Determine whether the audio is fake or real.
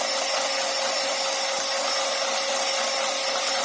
real